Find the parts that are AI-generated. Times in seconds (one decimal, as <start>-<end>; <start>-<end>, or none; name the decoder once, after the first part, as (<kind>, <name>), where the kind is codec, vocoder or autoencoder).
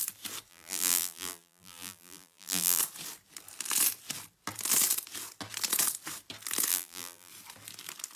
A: 0.5-2.8 (vocoder, BigVGAN v2); 6.7-7.3